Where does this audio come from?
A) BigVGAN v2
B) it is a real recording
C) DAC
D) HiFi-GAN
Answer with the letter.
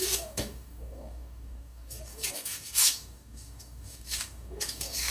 C